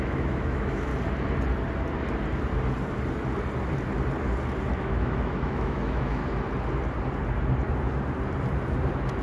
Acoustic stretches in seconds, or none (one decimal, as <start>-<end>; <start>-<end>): 0.9-4.7; 6.2-9.2